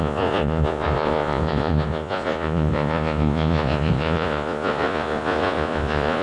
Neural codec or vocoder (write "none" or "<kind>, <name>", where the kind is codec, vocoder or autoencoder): vocoder, Vocos